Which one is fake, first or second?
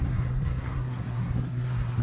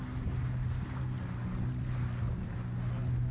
first